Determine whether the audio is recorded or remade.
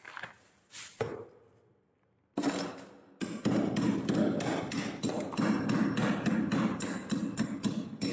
recorded